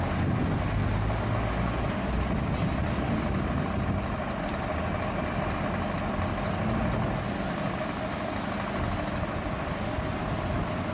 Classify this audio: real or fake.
real